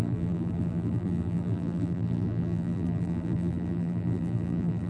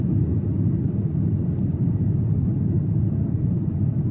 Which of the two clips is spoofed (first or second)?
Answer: first